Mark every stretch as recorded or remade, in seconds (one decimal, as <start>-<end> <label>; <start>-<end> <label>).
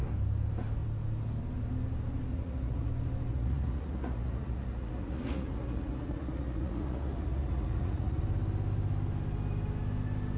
0.0-2.3 recorded; 2.3-2.9 remade; 2.9-3.3 recorded; 3.3-8.2 remade; 8.2-10.4 recorded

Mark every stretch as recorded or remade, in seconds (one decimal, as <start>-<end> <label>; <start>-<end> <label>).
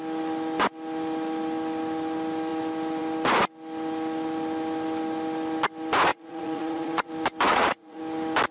0.0-6.1 recorded; 6.1-7.1 remade; 7.1-7.5 recorded; 7.5-8.0 remade; 8.0-8.5 recorded